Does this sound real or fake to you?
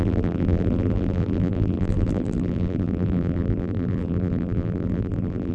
fake